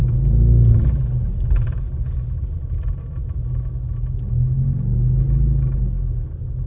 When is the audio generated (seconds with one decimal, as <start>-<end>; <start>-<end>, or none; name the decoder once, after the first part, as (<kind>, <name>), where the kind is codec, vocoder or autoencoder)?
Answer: 0.0-2.0 (vocoder, BigVGAN v2)